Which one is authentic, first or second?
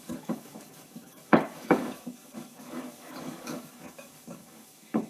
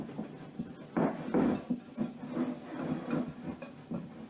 second